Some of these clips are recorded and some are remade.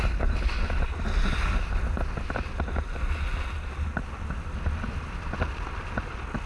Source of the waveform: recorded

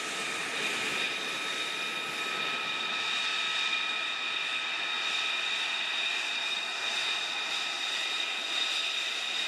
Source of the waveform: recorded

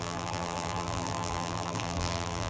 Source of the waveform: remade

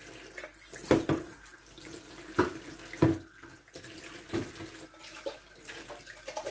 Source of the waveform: recorded